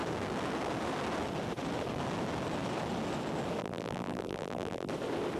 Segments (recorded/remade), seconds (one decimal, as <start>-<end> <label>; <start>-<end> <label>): 0.0-3.6 recorded; 3.6-4.9 remade; 4.9-5.4 recorded